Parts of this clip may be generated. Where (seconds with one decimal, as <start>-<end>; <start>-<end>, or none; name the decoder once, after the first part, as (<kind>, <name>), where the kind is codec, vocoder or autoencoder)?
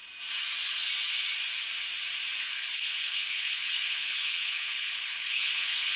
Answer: 2.4-6.0 (codec, HILCodec)